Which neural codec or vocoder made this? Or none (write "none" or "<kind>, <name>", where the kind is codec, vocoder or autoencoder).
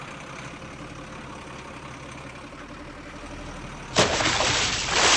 none